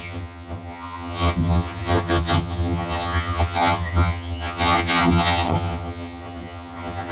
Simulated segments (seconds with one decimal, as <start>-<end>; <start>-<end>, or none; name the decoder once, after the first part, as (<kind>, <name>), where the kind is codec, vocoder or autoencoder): 0.0-7.1 (vocoder, HiFi-GAN)